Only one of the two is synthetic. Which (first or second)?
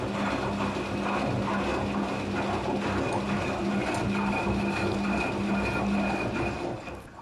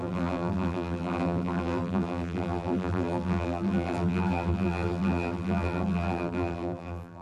second